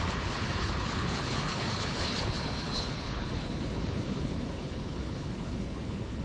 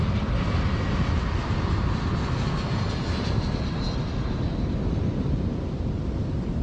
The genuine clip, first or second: second